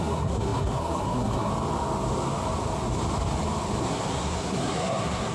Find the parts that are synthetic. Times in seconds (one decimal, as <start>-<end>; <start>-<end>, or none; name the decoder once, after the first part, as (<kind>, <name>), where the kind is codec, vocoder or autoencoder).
0.0-1.5 (codec, SNAC); 3.8-5.3